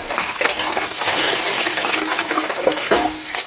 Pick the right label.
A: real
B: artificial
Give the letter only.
B